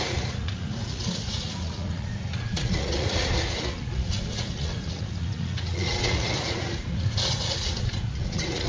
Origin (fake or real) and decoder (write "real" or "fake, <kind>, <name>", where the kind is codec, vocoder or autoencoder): fake, vocoder, Vocos